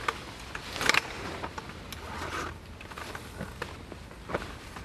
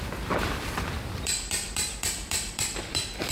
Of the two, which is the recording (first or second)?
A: first